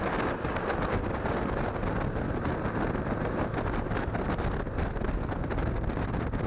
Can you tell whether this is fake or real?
real